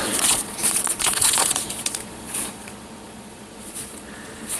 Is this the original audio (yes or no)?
no